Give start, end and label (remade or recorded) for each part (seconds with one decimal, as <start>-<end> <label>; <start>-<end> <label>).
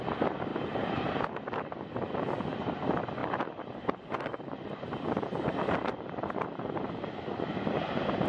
0.0-3.2 recorded; 3.2-7.1 remade; 7.1-8.3 recorded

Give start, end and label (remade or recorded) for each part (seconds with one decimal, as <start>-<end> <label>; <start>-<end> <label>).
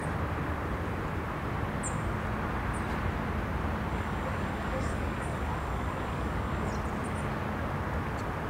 0.0-3.9 recorded; 3.9-6.7 remade; 6.7-8.5 recorded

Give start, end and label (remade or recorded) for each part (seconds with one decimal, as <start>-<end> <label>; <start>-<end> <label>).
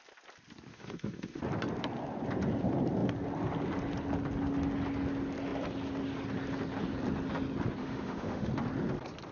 0.0-0.7 recorded; 0.7-1.4 remade; 1.4-7.8 recorded; 7.8-8.5 remade; 8.5-9.3 recorded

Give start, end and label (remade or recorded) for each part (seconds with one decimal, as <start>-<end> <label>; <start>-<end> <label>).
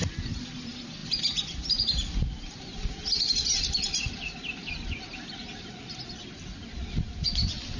0.0-7.8 recorded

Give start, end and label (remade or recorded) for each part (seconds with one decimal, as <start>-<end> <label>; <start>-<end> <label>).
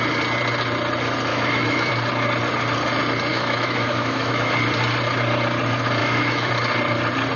0.0-1.3 recorded; 1.3-1.9 remade; 1.9-3.3 recorded; 3.3-4.5 remade; 4.5-6.0 recorded; 6.0-6.5 remade; 6.5-7.4 recorded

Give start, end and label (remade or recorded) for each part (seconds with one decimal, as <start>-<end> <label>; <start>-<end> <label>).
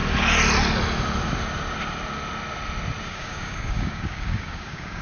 0.0-3.0 recorded; 3.0-5.0 remade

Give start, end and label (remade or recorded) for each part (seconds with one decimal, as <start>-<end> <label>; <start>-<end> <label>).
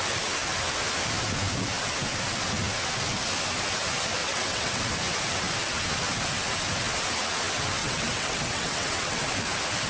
0.0-4.2 recorded; 4.2-4.8 remade; 4.8-7.8 recorded; 7.8-9.3 remade; 9.3-9.9 recorded